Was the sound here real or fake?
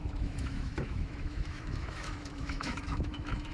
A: fake